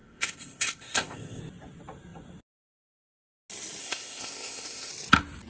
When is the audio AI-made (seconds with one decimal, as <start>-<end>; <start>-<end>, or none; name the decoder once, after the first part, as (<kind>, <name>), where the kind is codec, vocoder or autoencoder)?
0.0-1.4 (codec, ZipCodec); 3.8-4.9